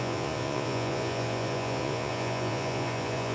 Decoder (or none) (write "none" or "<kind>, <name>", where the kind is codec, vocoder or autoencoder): vocoder, Vocos